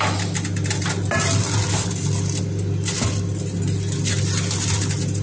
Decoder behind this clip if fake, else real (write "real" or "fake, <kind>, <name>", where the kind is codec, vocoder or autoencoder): real